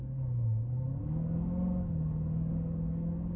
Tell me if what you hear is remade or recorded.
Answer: remade